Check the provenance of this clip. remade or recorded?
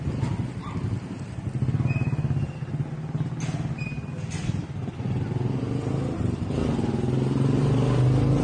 recorded